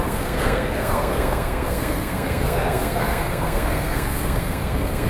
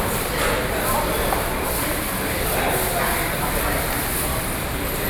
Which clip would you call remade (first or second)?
first